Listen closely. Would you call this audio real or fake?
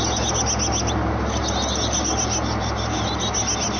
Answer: real